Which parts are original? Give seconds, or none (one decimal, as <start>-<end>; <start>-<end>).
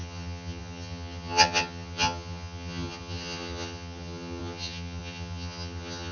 none